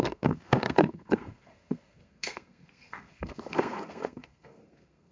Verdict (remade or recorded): remade